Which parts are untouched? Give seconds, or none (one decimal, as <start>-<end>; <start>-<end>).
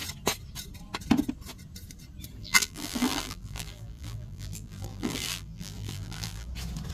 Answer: 0.0-2.4; 6.5-6.9